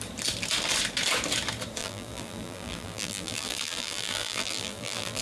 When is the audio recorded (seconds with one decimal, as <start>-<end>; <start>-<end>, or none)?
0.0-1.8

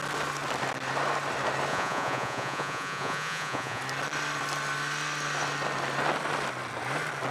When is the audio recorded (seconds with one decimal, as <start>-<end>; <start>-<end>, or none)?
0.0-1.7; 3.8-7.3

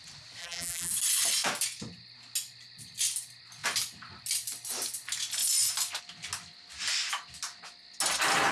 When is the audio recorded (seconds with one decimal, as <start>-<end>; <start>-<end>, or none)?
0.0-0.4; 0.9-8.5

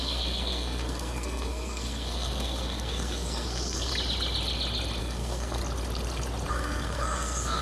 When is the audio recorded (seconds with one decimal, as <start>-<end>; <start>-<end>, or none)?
3.9-5.0; 5.6-6.5

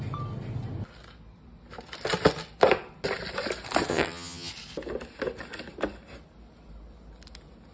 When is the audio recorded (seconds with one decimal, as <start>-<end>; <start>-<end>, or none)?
0.0-3.9; 4.5-7.7

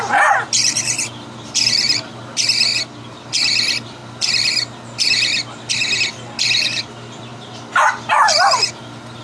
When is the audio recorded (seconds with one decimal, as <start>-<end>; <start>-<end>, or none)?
0.0-9.2

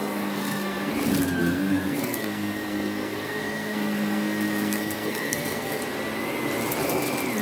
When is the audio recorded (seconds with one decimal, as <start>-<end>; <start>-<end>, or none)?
0.9-1.4; 5.8-7.4